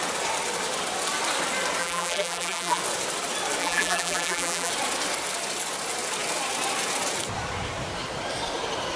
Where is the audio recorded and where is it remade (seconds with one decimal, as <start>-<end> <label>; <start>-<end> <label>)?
0.0-1.8 recorded; 1.8-2.8 remade; 2.8-3.6 recorded; 3.6-4.7 remade; 4.7-9.0 recorded